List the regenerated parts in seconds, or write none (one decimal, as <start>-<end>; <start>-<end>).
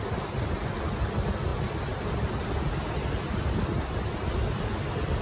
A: none